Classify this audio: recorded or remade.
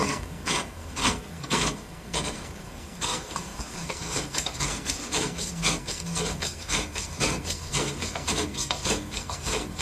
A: remade